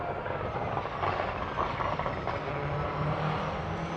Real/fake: real